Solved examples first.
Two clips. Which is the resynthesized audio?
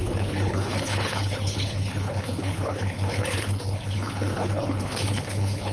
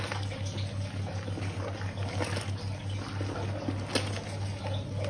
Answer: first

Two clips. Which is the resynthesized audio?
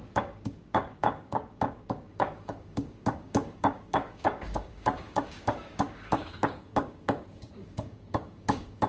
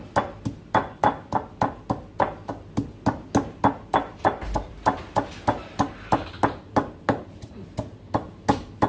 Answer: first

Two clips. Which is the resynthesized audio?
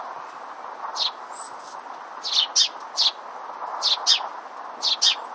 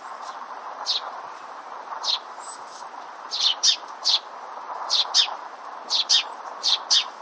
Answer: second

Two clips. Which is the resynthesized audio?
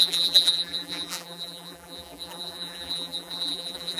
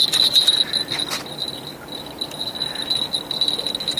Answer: first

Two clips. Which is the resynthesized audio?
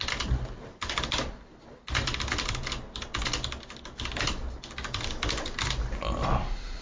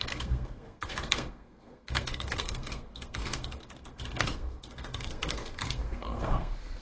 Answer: second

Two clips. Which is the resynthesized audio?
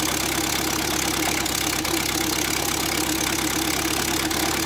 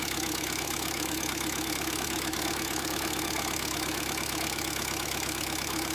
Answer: second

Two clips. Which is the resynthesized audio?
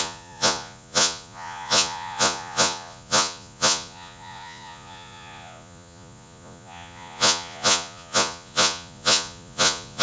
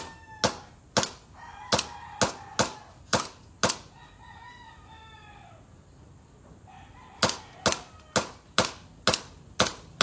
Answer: first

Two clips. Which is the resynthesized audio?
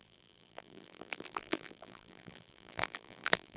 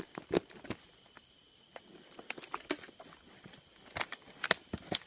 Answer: first